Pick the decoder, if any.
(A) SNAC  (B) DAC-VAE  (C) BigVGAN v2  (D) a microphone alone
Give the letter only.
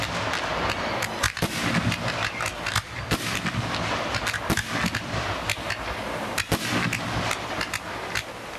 D